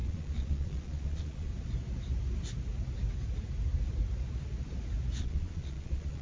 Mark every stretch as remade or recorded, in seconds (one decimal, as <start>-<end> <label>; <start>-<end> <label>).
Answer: 0.0-1.5 remade; 1.5-5.2 recorded; 5.2-6.2 remade